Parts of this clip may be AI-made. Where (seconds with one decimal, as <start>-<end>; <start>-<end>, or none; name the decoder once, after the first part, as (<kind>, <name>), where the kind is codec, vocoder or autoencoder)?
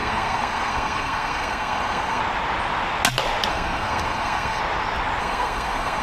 0.0-2.2 (codec, SNAC); 3.5-4.6; 5.2-6.0